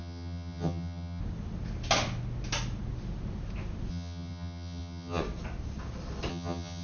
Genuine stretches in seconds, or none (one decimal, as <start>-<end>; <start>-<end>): 1.2-3.9; 5.2-6.3